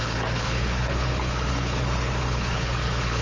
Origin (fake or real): fake